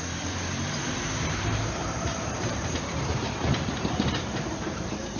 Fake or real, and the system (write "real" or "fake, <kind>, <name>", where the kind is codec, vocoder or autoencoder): fake, vocoder, BigVGAN v2